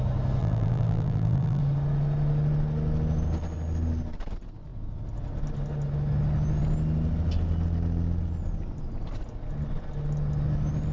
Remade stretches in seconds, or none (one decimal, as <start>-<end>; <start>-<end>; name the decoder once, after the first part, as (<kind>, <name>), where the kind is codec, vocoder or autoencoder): 0.4-1.6 (vocoder, BigVGAN v2)

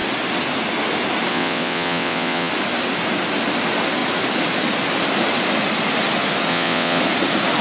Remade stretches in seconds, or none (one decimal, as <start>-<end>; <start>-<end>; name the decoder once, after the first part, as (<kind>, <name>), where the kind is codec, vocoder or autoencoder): 1.3-2.5 (vocoder, WaveNeXt); 6.5-7.0

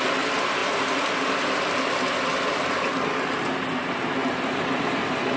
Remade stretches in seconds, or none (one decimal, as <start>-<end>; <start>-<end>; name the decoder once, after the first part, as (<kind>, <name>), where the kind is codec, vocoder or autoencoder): none

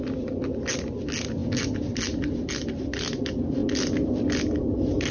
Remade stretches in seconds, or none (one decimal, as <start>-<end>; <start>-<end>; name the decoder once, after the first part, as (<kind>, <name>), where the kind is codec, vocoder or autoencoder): none